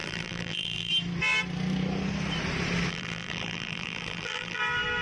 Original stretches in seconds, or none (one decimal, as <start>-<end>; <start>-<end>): 0.9-2.9; 4.6-5.0